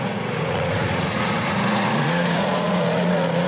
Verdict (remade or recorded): remade